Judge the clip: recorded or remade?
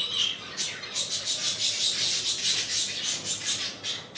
recorded